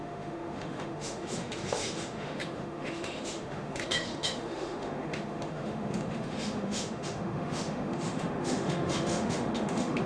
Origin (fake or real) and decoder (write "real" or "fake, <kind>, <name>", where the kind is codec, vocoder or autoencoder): fake, autoencoder, DAC-VAE